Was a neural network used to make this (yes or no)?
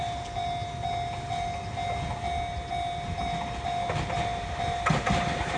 no